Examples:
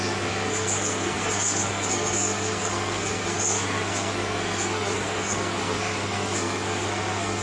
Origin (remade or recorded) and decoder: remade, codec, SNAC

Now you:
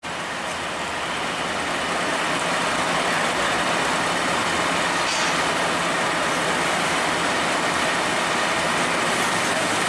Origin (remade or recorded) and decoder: recorded